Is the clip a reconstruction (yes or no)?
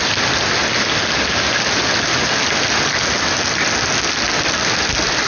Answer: no